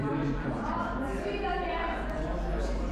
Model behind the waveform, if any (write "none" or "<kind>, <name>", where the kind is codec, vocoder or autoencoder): vocoder, BigVGAN v2